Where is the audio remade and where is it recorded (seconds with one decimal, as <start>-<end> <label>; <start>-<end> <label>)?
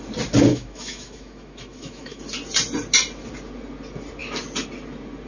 0.0-0.5 recorded; 0.5-2.2 remade; 2.2-5.3 recorded